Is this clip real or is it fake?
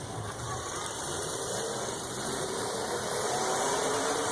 fake